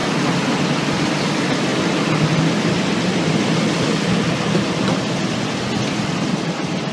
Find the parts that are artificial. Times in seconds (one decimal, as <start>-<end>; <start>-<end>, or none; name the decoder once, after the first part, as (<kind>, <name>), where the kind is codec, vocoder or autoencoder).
none